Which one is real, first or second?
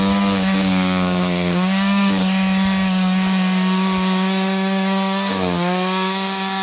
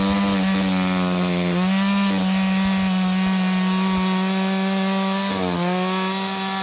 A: second